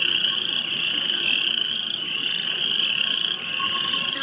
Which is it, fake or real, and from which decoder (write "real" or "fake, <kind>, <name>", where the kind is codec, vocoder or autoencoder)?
real